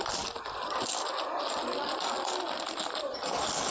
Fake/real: real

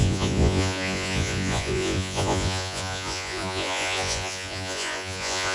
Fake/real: fake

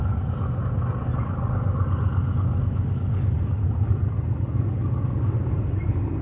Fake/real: real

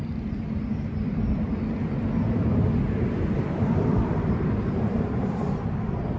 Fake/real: real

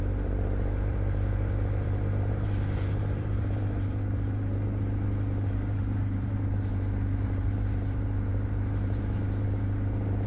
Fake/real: fake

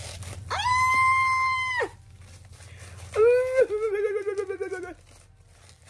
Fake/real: real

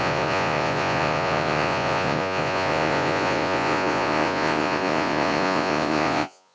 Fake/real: fake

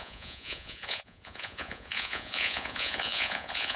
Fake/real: fake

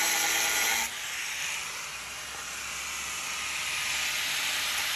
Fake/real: real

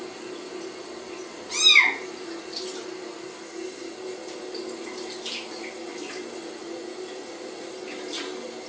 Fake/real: real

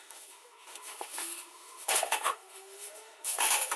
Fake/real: fake